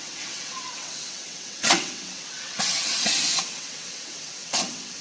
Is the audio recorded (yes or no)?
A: no